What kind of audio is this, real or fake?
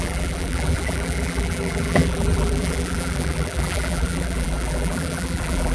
fake